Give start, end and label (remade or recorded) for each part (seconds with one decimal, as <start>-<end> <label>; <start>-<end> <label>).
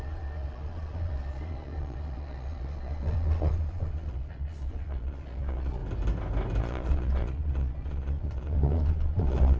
0.0-5.8 remade; 5.8-6.6 recorded; 6.6-9.6 remade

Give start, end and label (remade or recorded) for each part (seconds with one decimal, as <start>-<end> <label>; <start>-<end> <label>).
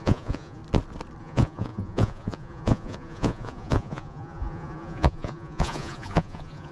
0.0-0.6 remade; 0.6-1.2 recorded; 1.2-6.7 remade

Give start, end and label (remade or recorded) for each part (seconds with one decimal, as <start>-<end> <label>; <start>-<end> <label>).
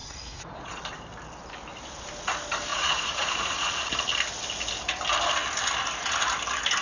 0.0-0.8 remade; 0.8-2.7 recorded; 2.7-3.8 remade; 3.8-6.8 recorded